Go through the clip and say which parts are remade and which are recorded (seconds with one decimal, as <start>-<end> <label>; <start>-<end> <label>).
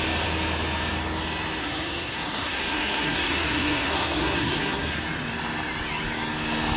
0.0-1.6 recorded; 1.6-5.0 remade; 5.0-6.8 recorded